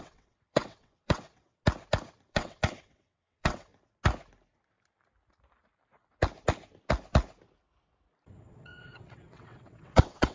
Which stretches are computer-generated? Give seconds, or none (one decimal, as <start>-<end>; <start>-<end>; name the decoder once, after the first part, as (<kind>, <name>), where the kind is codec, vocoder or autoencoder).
0.0-1.6 (vocoder, WaveNeXt); 2.3-3.7; 8.4-10.3